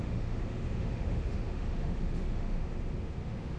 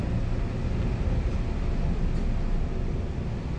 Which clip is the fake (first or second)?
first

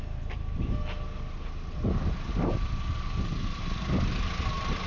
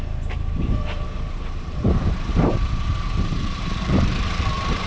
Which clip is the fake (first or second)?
second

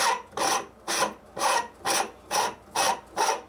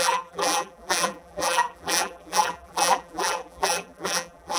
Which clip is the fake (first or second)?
second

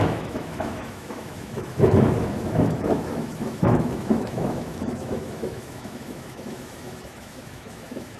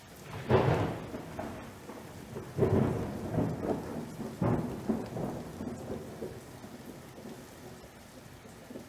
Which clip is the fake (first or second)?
first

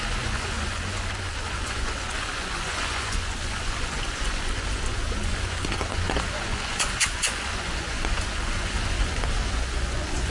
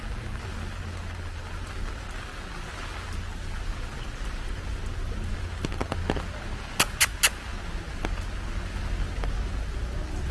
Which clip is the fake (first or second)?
first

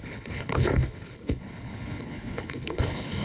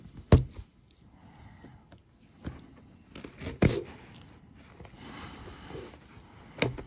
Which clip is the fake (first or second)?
first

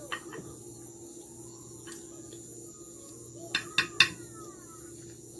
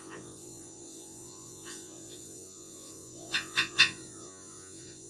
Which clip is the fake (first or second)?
second